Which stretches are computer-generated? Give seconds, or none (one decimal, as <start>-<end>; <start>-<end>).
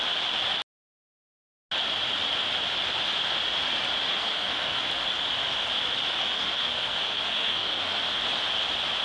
4.1-4.8; 6.2-8.2